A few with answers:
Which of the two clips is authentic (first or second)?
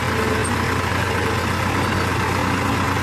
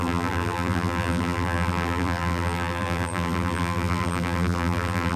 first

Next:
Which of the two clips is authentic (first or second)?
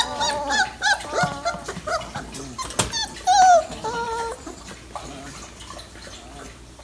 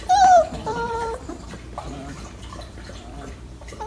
first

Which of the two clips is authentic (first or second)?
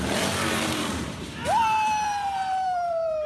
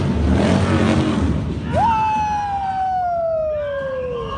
second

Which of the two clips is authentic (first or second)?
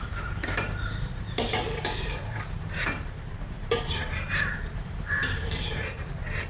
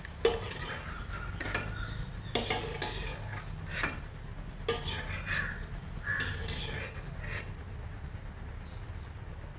second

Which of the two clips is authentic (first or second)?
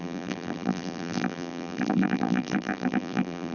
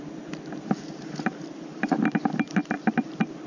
second